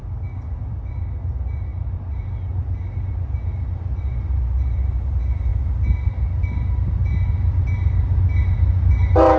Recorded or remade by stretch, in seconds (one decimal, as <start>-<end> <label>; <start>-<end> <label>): 0.0-9.4 recorded